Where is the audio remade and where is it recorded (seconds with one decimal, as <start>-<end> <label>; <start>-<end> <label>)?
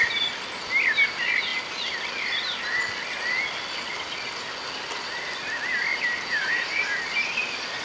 0.0-5.9 recorded; 5.9-6.7 remade; 6.7-7.8 recorded